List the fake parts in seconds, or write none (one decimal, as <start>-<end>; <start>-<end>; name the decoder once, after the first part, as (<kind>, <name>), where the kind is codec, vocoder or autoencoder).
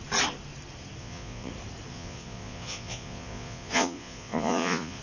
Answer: 1.0-1.5 (vocoder, Vocos); 1.9-5.0